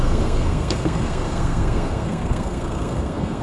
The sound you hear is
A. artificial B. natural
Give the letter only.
A